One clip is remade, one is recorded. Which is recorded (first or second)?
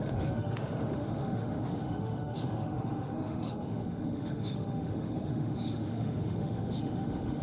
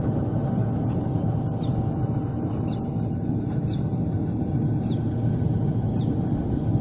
second